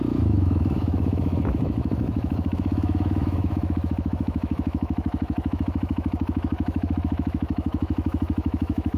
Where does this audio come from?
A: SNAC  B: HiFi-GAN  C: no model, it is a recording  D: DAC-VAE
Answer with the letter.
D